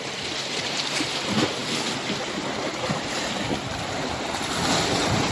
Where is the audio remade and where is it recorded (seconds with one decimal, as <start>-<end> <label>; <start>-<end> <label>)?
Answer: 0.0-5.3 recorded

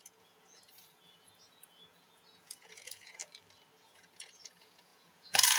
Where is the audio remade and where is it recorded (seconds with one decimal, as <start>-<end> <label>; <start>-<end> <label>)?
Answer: 0.0-3.2 remade; 3.2-3.8 recorded; 3.8-5.6 remade

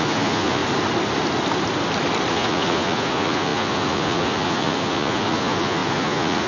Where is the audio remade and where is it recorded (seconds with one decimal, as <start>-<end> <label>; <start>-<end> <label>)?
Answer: 0.0-0.6 remade; 0.6-2.3 recorded; 2.3-6.5 remade

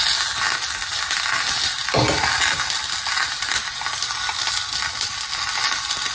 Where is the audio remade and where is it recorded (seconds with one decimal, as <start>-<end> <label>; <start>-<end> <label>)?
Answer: 0.0-6.1 recorded

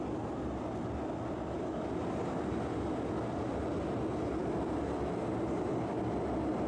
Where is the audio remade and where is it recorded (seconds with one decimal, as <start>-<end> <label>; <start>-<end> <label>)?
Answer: 0.0-6.7 recorded

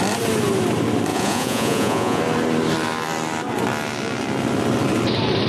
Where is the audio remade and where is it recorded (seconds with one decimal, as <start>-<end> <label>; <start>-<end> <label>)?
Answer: 0.0-1.1 recorded; 1.1-2.2 remade; 2.2-5.5 recorded